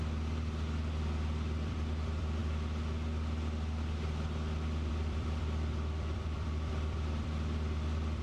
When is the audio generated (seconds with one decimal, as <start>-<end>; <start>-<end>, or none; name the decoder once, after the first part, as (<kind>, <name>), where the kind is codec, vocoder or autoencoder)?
0.0-2.4 (vocoder, BigVGAN v2); 4.9-8.2

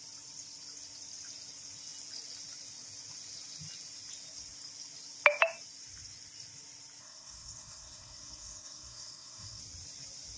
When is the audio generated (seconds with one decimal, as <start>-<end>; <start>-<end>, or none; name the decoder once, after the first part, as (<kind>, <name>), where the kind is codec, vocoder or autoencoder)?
7.0-9.6 (codec, SNAC)

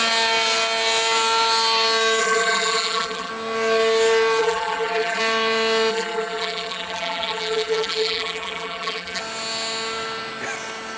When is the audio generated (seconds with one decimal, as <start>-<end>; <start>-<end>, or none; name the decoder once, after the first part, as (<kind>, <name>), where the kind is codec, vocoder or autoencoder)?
2.2-3.3 (vocoder, BigVGAN v2); 4.4-5.2; 5.9-9.2

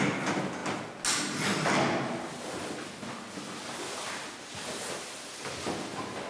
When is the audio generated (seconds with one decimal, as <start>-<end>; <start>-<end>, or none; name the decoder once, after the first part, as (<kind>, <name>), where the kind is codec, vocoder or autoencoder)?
none

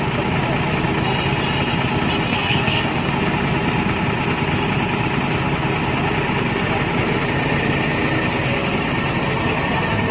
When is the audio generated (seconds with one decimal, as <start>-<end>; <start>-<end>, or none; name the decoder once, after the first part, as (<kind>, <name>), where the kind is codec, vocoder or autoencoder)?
2.3-3.1 (codec, SNAC)

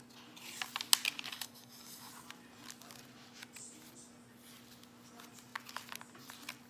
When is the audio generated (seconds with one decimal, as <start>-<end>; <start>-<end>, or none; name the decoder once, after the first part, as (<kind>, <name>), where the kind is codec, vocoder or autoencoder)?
1.3-2.1 (codec, DAC)